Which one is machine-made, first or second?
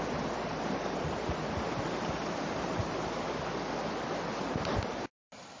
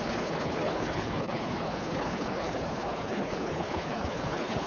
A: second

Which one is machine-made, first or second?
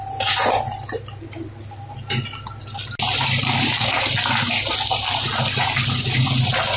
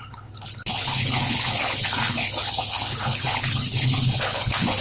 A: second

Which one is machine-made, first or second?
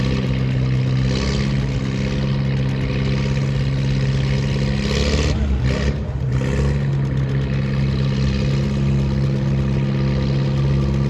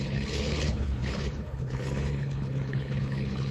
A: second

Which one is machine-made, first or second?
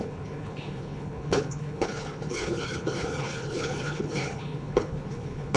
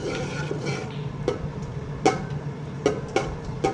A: first